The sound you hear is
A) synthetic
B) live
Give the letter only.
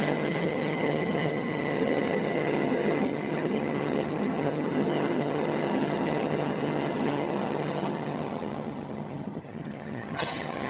A